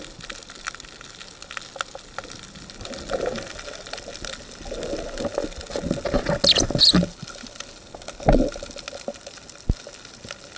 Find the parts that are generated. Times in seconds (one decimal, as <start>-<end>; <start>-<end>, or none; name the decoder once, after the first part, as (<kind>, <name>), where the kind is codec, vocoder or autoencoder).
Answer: none